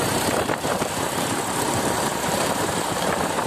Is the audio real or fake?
fake